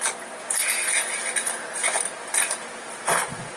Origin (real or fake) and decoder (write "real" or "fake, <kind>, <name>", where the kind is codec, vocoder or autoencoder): real